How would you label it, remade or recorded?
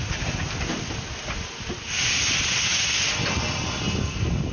recorded